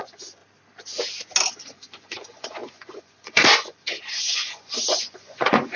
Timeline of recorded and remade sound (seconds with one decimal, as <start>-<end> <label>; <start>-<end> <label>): 0.0-0.4 remade; 0.4-1.5 recorded; 1.5-5.8 remade

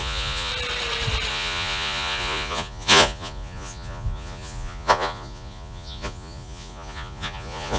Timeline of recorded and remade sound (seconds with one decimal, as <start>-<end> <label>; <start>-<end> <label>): 0.0-0.5 remade; 0.5-1.3 recorded; 1.3-7.8 remade

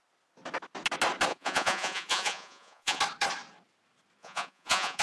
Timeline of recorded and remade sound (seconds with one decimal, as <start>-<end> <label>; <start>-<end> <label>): 0.0-1.3 recorded; 1.3-3.0 remade; 3.0-4.2 recorded; 4.2-5.0 remade

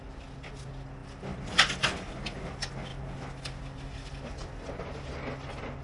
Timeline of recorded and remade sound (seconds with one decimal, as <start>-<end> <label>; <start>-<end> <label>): 0.0-5.8 recorded